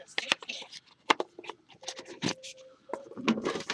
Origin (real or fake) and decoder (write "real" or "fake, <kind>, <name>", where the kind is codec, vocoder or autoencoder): real